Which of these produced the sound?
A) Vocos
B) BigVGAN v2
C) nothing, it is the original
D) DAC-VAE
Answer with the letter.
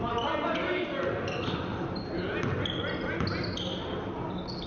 C